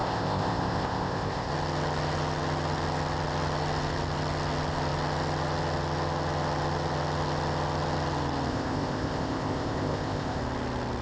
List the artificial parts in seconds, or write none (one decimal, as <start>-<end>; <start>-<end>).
0.0-1.5; 8.5-10.4